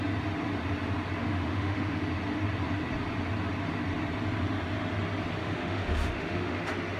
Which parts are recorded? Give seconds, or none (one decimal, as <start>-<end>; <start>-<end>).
0.0-1.2; 2.0-5.4; 6.6-7.0